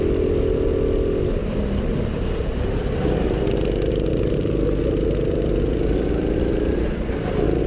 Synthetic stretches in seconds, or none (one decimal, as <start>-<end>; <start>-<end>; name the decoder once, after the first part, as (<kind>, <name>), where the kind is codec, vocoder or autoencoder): none